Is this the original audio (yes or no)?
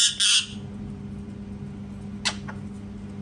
yes